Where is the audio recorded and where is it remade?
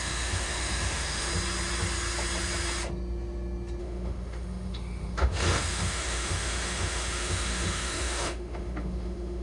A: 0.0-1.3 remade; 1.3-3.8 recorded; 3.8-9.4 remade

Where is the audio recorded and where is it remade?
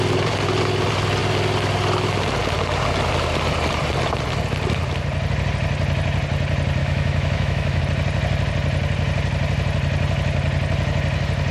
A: 0.0-6.8 recorded; 6.8-7.8 remade; 7.8-11.5 recorded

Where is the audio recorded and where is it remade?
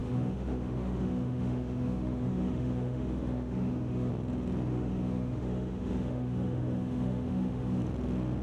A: 0.0-4.1 remade; 4.1-4.7 recorded; 4.7-7.8 remade; 7.8-8.4 recorded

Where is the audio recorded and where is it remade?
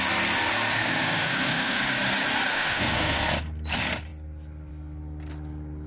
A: 0.0-0.7 recorded; 0.7-1.8 remade; 1.8-2.5 recorded; 2.5-3.2 remade; 3.2-5.9 recorded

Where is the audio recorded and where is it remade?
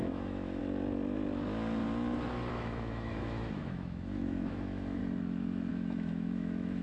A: 0.0-0.6 remade; 0.6-2.5 recorded; 2.5-5.0 remade; 5.0-5.7 recorded; 5.7-6.8 remade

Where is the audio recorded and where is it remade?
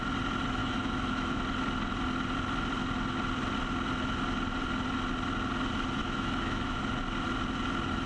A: 0.0-0.6 recorded; 0.6-1.4 remade; 1.4-6.0 recorded; 6.0-6.8 remade; 6.8-8.1 recorded